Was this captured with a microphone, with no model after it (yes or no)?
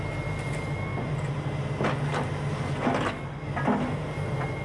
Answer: yes